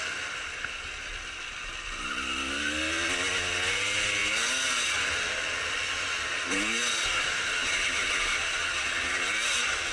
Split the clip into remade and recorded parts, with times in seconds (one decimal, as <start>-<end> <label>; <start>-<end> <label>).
0.0-9.9 recorded